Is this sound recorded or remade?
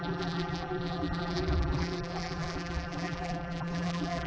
remade